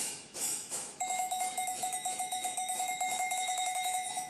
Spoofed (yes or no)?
yes